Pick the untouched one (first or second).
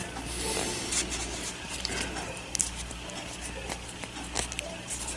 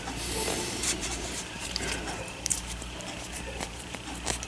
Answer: first